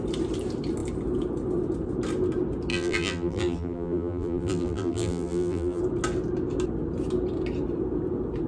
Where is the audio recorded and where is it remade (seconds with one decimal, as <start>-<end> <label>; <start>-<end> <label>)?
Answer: 0.0-2.7 recorded; 2.7-5.8 remade; 5.8-8.5 recorded